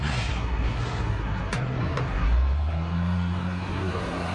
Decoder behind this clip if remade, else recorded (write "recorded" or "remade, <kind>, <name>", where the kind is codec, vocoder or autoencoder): remade, codec, SNAC